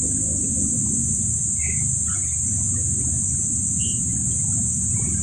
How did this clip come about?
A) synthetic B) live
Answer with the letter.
B